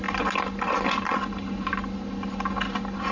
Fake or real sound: real